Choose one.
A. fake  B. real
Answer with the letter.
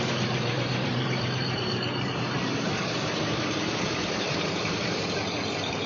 A